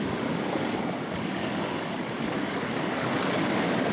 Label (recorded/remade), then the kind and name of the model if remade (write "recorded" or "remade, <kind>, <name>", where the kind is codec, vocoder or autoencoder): remade, codec, DAC